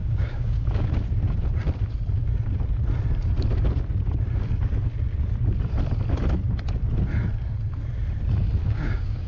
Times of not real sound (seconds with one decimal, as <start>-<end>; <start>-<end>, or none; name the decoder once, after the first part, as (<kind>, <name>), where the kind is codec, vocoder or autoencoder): 0.0-0.9 (codec, DAC); 8.6-9.3